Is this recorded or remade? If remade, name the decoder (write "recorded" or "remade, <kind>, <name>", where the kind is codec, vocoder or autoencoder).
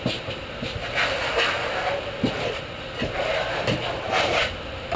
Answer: recorded